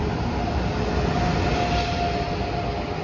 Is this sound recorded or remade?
recorded